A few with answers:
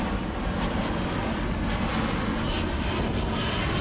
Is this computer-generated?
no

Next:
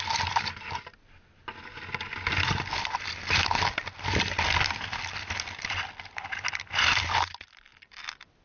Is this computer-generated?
no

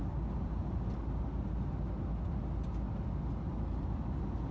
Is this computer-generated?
no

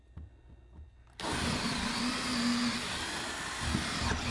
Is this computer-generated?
no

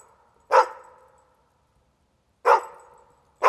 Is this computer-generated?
no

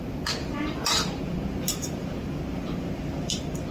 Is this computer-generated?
no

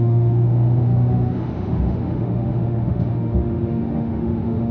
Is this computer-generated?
yes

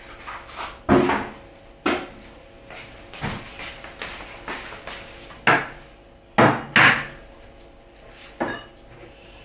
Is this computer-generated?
no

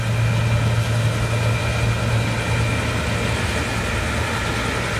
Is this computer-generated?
no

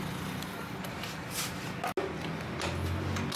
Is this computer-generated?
no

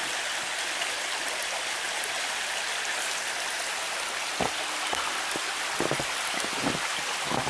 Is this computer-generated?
no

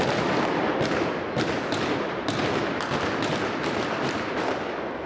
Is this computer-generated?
no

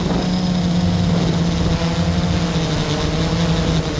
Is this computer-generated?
no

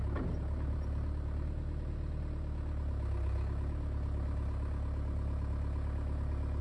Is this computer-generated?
no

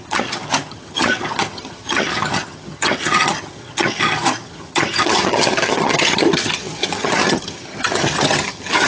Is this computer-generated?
yes